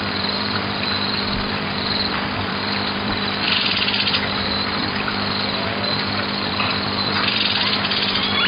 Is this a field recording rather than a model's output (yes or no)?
no